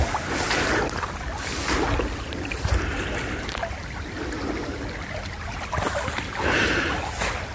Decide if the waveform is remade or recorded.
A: recorded